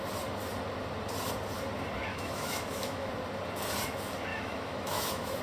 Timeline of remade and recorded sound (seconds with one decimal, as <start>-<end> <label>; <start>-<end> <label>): 0.0-2.1 recorded; 2.1-3.1 remade; 3.1-4.3 recorded; 4.3-5.4 remade